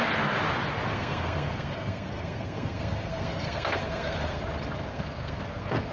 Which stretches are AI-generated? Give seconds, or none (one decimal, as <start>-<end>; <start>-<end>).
0.9-4.4; 4.9-5.9